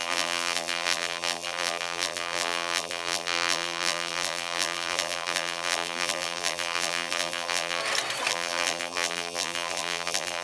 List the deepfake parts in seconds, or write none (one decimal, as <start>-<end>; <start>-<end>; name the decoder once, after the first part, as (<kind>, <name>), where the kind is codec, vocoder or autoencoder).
0.0-7.8 (vocoder, BigVGAN v2); 8.3-10.4